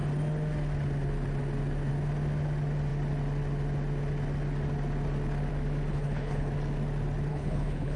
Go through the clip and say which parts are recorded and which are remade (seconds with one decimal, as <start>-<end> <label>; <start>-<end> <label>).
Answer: 0.0-5.9 recorded; 5.9-6.5 remade; 6.5-7.3 recorded; 7.3-8.0 remade